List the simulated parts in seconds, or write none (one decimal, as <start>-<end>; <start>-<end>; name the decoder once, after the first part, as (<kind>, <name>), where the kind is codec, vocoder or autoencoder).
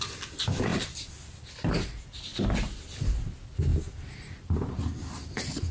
none